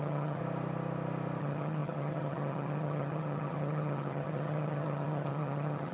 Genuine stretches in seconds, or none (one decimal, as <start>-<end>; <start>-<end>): 0.4-1.4